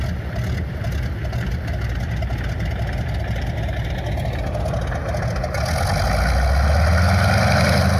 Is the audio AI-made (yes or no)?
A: no